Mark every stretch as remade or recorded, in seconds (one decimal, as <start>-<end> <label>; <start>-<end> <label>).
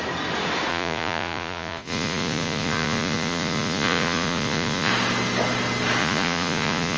0.0-0.7 recorded; 0.7-4.9 remade; 4.9-6.0 recorded; 6.0-7.0 remade